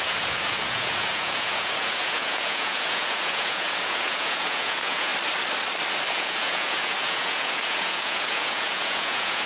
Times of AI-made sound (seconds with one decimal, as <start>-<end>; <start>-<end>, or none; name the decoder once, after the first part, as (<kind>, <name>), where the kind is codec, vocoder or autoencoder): 0.0-5.1 (vocoder, Vocos); 6.1-9.5